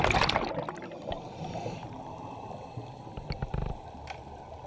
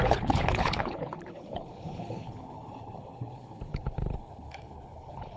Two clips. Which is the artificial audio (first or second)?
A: second